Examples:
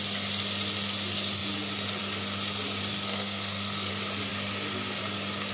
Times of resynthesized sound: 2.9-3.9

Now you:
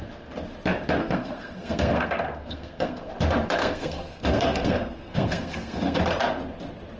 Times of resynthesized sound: 1.0-3.1; 3.6-6.0

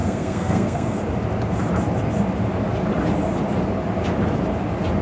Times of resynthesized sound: 0.0-1.0